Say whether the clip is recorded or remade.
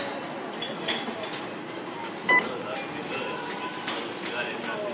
recorded